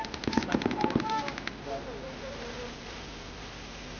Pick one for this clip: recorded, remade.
recorded